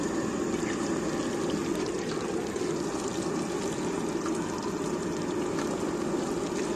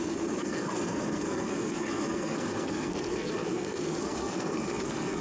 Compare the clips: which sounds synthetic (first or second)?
second